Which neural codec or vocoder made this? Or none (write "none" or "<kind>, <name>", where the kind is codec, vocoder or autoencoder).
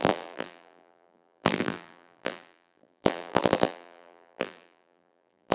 vocoder, BigVGAN v2